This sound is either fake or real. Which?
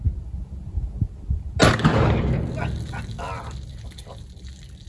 real